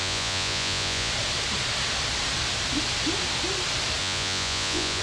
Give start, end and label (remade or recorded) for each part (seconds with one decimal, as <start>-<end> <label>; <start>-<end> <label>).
0.0-1.1 remade; 1.1-4.0 recorded; 4.0-5.0 remade